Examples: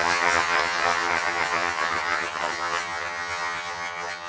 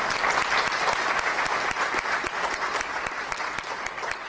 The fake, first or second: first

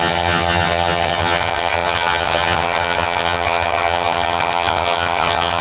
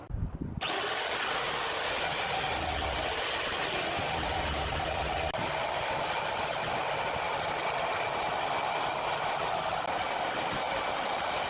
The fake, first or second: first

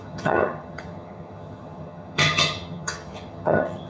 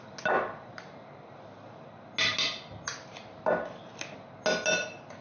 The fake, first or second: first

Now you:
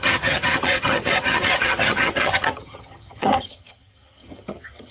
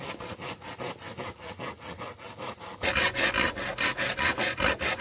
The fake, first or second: first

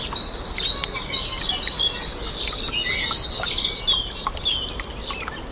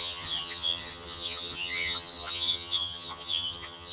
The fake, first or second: second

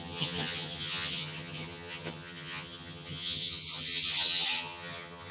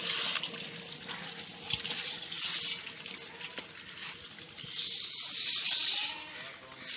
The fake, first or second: first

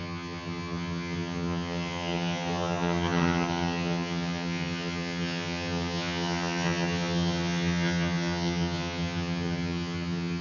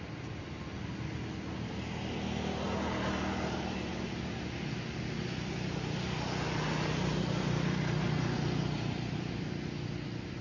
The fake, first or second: first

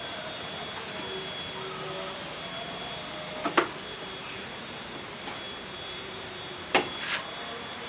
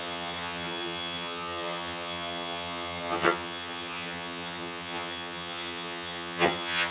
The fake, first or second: second